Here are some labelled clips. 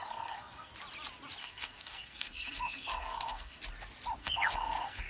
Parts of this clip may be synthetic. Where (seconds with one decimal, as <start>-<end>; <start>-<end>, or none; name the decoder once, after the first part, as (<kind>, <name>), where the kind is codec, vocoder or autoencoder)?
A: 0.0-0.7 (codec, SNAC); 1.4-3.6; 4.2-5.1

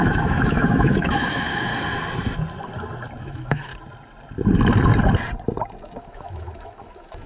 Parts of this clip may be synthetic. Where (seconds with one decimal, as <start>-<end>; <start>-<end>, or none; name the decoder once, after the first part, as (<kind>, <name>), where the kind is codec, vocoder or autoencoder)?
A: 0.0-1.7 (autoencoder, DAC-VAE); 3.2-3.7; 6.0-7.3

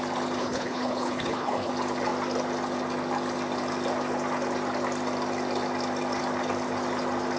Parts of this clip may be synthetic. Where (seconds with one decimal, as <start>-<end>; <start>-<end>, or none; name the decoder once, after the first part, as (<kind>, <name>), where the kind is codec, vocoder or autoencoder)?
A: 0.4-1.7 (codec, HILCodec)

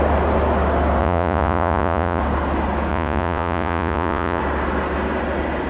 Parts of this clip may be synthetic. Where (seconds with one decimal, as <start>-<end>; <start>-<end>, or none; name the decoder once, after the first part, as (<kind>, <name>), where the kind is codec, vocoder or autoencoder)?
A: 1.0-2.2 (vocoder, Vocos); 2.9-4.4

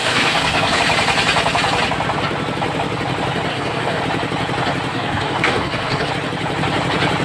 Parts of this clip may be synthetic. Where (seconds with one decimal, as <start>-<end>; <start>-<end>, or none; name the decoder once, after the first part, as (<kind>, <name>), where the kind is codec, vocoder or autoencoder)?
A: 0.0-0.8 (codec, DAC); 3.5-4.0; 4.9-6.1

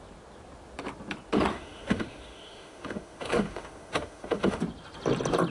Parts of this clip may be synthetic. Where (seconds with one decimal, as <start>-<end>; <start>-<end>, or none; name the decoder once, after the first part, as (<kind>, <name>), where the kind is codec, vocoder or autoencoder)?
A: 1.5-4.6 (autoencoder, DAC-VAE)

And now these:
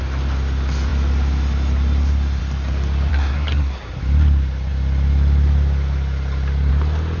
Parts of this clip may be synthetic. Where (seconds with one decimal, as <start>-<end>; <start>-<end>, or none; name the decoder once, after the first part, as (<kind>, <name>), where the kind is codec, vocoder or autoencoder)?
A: 3.1-4.0 (codec, SNAC)